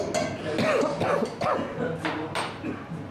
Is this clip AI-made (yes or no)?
no